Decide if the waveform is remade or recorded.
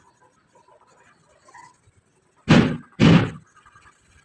recorded